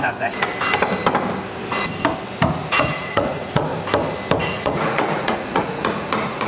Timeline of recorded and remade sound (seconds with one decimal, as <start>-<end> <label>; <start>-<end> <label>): 0.0-0.5 remade; 0.5-2.5 recorded; 2.5-3.7 remade; 3.7-4.4 recorded; 4.4-6.5 remade

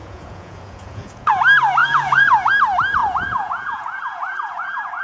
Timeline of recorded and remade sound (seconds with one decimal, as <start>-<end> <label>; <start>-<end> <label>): 0.0-1.3 remade; 1.3-1.8 recorded; 1.8-2.5 remade; 2.5-3.0 recorded; 3.0-5.0 remade

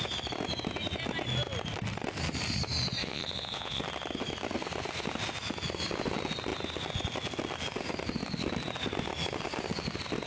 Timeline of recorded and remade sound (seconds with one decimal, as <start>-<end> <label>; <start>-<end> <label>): 0.0-3.0 recorded; 3.0-3.8 remade; 3.8-10.3 recorded